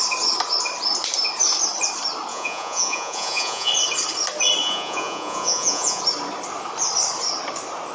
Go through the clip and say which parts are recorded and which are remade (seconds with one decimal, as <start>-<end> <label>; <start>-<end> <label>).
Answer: 0.0-2.3 recorded; 2.3-3.7 remade; 3.7-4.6 recorded; 4.6-6.0 remade; 6.0-7.9 recorded